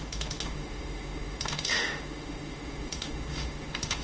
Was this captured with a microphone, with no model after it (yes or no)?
no